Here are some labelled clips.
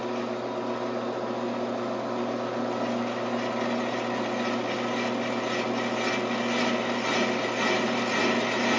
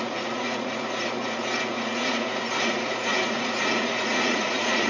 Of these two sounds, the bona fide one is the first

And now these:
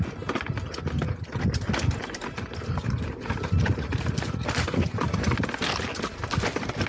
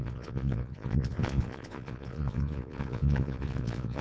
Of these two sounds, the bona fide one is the first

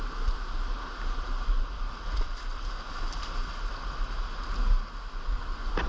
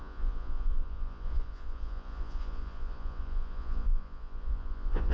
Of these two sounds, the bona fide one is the first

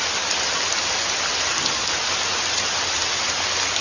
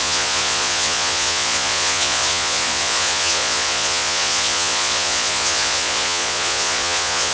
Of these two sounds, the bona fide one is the first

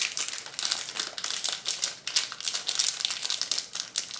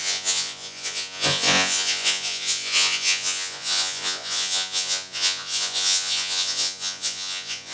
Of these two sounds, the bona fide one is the first